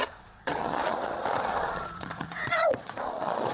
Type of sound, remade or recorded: remade